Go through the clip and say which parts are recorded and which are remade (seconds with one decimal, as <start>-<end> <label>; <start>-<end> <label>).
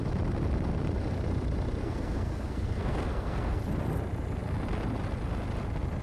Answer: 0.0-1.8 recorded; 1.8-3.6 remade; 3.6-6.0 recorded